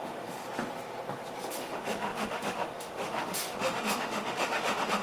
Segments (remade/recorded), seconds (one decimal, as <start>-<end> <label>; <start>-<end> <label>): 0.0-0.4 remade; 0.4-1.5 recorded; 1.5-5.0 remade